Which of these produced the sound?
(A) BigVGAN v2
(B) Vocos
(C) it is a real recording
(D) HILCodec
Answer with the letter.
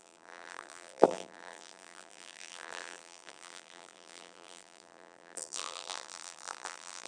A